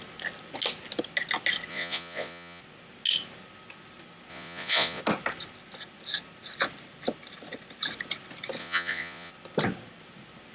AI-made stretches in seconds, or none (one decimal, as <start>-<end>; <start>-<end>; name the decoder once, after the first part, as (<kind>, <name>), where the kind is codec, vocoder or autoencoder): 1.7-2.6 (vocoder, Vocos); 4.3-5.0; 8.6-9.3